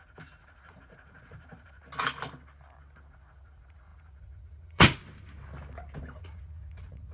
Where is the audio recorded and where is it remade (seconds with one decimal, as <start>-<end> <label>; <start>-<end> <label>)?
0.0-1.8 remade; 1.8-3.1 recorded; 3.1-5.0 remade; 5.0-6.2 recorded; 6.2-7.1 remade